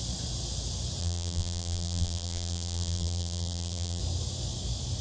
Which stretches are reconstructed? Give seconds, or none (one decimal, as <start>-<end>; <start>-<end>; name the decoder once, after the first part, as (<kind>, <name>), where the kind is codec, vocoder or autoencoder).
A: 1.0-4.0 (vocoder, BigVGAN v2)